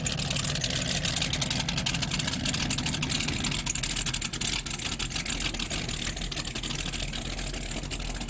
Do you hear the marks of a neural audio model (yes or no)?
no